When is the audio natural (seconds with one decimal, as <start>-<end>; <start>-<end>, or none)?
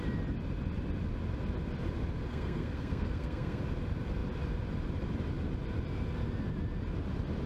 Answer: 0.0-2.3; 3.6-7.5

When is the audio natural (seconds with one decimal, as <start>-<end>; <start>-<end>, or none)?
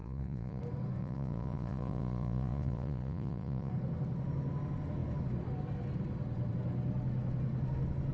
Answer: 0.6-1.0; 3.7-8.1